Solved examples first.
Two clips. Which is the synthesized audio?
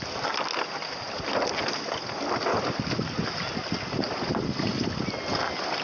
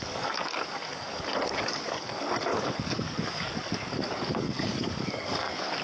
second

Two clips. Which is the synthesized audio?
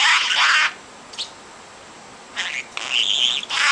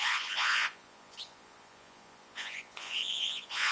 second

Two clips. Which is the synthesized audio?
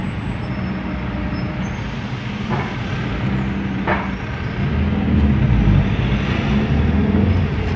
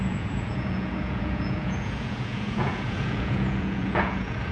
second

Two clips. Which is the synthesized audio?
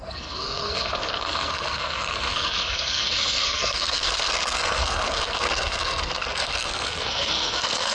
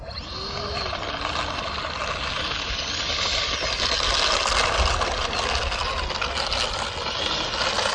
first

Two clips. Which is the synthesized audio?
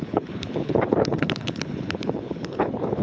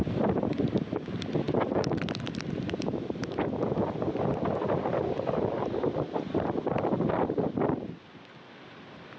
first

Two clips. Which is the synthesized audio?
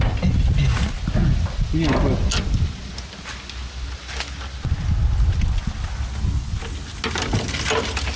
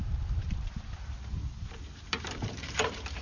second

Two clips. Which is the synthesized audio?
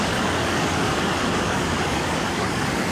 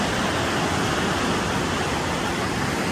first